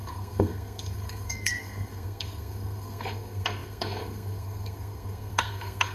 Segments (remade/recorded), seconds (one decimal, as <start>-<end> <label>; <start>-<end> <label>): 0.0-5.9 remade